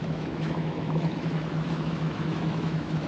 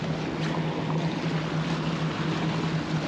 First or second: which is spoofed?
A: first